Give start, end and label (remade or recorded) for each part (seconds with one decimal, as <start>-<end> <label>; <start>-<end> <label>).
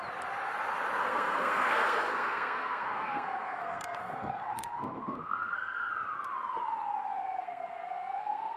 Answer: 0.0-1.0 recorded; 1.0-5.9 remade; 5.9-7.2 recorded; 7.2-8.6 remade